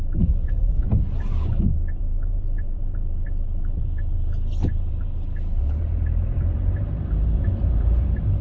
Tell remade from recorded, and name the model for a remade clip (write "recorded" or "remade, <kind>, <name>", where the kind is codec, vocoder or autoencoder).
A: remade, vocoder, BigVGAN v2